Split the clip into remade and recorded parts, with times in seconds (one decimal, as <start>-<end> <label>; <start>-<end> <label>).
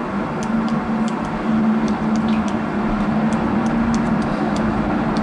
0.0-5.2 recorded